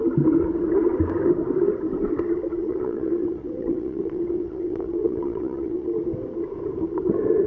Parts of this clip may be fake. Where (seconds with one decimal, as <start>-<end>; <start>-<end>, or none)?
2.6-5.9